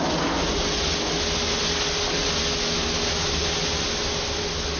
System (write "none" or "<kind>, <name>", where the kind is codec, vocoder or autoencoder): none